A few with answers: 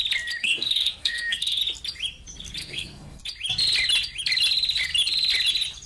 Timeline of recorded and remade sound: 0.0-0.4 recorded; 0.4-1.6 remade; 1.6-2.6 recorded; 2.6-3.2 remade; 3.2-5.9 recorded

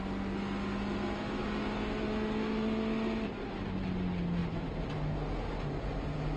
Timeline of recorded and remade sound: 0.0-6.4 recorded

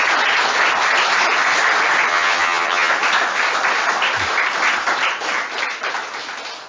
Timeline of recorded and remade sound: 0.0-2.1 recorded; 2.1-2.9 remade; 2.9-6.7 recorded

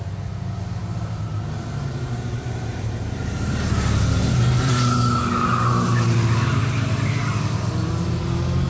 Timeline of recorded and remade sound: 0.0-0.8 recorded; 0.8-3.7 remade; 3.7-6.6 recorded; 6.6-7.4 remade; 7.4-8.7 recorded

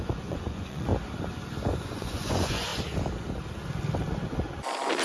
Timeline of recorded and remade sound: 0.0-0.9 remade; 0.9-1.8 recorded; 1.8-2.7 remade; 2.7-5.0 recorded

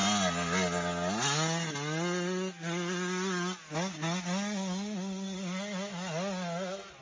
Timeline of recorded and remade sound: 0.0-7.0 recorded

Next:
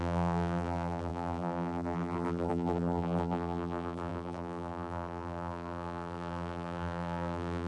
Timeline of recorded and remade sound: 0.0-7.7 remade